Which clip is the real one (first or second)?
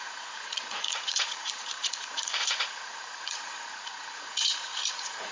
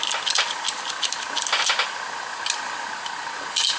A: second